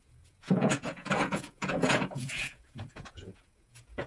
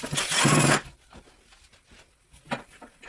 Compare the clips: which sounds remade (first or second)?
first